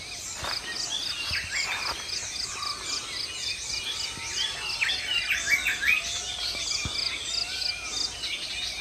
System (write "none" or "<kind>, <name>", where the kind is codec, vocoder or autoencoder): none